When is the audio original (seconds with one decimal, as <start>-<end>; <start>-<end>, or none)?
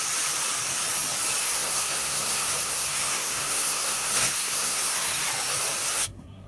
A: 0.0-1.4; 5.2-5.9